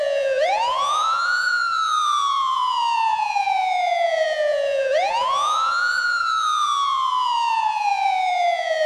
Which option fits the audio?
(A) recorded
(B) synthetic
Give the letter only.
B